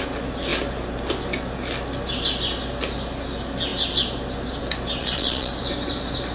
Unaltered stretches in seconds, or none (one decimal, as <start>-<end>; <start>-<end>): 0.0-5.0; 5.5-6.3